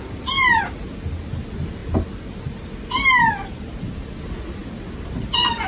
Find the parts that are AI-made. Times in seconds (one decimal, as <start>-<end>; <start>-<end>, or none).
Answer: none